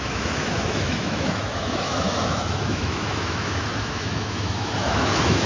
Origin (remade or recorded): remade